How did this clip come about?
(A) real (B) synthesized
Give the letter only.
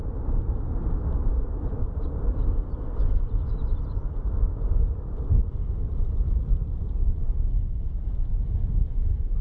A